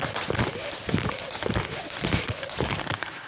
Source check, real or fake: real